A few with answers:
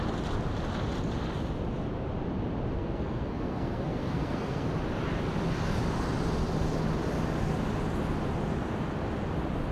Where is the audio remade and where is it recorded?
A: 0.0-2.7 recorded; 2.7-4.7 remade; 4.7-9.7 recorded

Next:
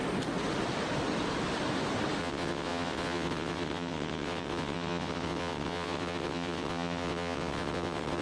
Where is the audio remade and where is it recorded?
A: 0.0-2.2 recorded; 2.2-8.2 remade

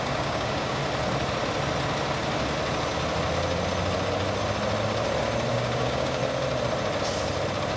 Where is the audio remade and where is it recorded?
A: 0.0-0.8 remade; 0.8-5.5 recorded; 5.5-6.2 remade; 6.2-7.8 recorded

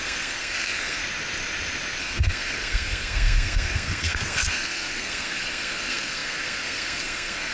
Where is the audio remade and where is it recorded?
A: 0.0-1.0 remade; 1.0-2.0 recorded; 2.0-7.5 remade